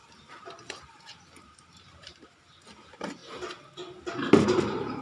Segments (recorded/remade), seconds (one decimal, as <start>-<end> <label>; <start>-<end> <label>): 0.0-3.2 remade; 3.2-4.4 recorded; 4.4-5.0 remade